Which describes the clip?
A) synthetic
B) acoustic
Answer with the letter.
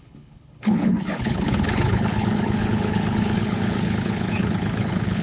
A